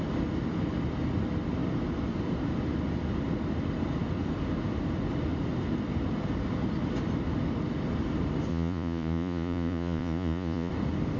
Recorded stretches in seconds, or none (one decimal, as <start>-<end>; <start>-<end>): 0.0-8.5; 10.7-11.2